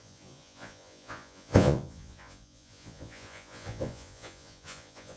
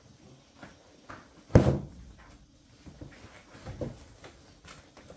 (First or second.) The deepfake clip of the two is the first